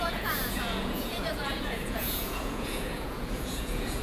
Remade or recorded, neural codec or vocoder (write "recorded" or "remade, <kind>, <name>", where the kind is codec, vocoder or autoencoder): remade, vocoder, Vocos